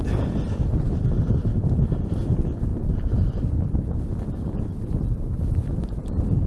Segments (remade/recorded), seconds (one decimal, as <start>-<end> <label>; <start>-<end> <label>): 0.0-1.5 recorded; 1.5-2.1 remade; 2.1-2.7 recorded; 2.7-6.0 remade; 6.0-6.5 recorded